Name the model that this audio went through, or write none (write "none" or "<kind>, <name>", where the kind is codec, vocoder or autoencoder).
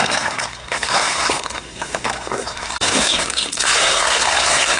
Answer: codec, SNAC